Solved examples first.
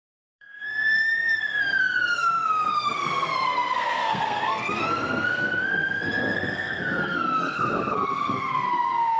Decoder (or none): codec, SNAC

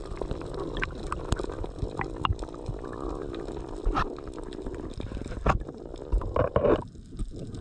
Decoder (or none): none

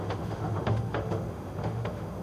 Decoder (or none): autoencoder, DAC-VAE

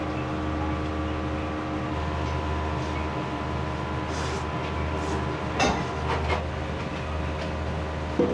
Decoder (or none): none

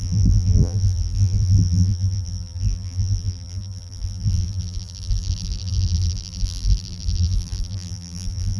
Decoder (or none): vocoder, BigVGAN v2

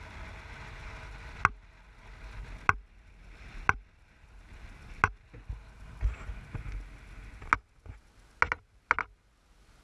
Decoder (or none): none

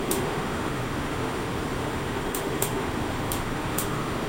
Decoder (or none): autoencoder, DAC-VAE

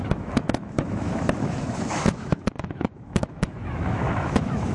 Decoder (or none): autoencoder, DAC-VAE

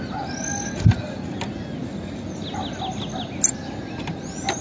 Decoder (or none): none